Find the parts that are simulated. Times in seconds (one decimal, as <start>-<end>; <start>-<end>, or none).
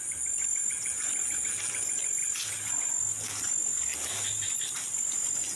none